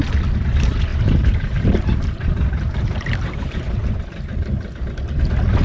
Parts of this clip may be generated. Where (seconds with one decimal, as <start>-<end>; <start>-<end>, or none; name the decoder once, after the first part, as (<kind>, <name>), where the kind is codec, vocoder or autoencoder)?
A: 0.9-4.3 (vocoder, BigVGAN v2)